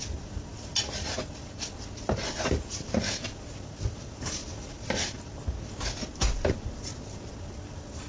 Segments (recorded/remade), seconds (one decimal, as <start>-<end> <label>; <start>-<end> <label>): 0.0-8.1 recorded

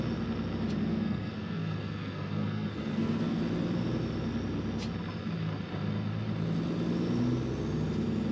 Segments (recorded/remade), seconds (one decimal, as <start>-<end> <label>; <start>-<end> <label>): 0.0-0.9 recorded; 0.9-3.4 remade; 3.4-8.3 recorded

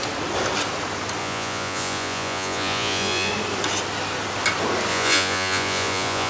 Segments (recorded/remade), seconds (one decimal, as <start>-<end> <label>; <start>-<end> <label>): 0.0-1.2 recorded; 1.2-3.3 remade; 3.3-4.9 recorded; 4.9-6.3 remade

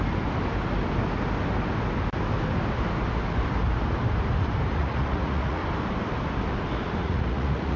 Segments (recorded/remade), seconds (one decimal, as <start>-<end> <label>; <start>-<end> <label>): 0.0-4.7 recorded; 4.7-5.6 remade; 5.6-7.0 recorded; 7.0-7.8 remade

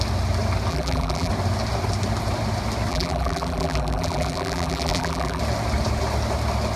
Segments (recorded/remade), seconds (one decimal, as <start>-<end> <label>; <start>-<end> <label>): 0.0-0.7 recorded; 0.7-1.3 remade; 1.3-2.9 recorded; 2.9-5.4 remade; 5.4-6.8 recorded

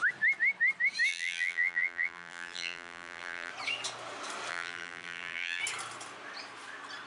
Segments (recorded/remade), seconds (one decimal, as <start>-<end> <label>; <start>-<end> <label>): 0.0-1.1 recorded; 1.1-3.5 remade; 3.5-4.5 recorded; 4.5-5.6 remade; 5.6-7.1 recorded

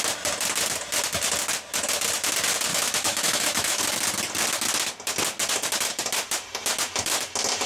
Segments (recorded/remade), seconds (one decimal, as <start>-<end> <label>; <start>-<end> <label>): 0.0-2.7 recorded; 2.7-3.8 remade; 3.8-7.7 recorded

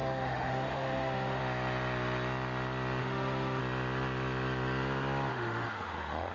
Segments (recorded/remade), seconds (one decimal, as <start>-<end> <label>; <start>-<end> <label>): 0.0-1.4 remade; 1.4-3.0 recorded; 3.0-3.6 remade; 3.6-5.3 recorded; 5.3-6.3 remade